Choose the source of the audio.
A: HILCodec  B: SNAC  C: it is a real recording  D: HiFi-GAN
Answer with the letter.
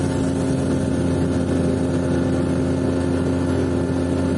C